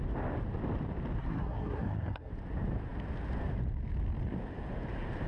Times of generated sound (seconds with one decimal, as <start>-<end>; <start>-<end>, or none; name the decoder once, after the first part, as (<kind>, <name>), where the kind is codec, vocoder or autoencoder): 1.2-2.3 (codec, SNAC)